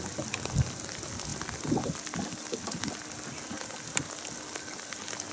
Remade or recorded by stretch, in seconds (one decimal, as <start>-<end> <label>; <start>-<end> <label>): 0.0-5.3 recorded